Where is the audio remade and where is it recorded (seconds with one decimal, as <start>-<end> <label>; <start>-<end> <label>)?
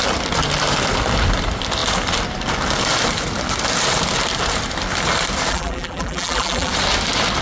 0.0-5.5 recorded; 5.5-6.7 remade; 6.7-7.4 recorded